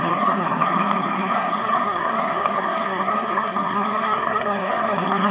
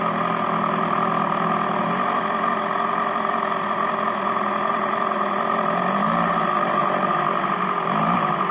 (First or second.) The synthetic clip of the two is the first